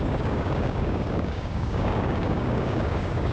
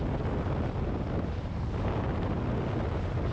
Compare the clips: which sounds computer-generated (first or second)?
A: first